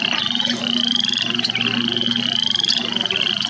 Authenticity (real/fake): real